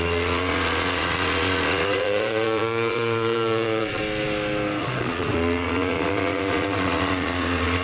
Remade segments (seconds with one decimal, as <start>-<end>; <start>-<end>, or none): 0.0-4.0; 4.8-7.8